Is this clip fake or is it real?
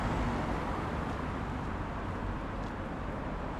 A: real